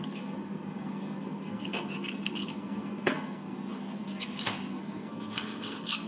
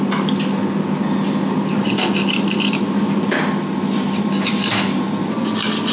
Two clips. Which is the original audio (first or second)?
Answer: second